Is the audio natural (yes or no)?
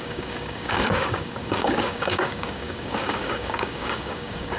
no